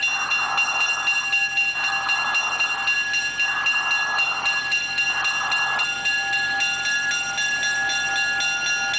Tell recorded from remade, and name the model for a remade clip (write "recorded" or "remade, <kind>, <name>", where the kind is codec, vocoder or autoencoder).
recorded